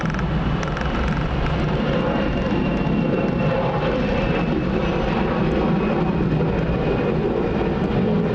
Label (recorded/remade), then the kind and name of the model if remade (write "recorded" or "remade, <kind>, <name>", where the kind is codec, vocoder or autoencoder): recorded